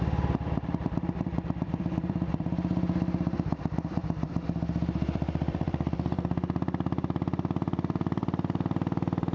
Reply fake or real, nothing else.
fake